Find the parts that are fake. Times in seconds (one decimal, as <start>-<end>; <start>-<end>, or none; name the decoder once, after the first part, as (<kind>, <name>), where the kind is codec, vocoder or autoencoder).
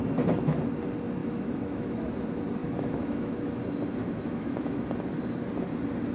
1.2-2.1 (autoencoder, DAC-VAE); 2.6-3.6; 4.0-4.8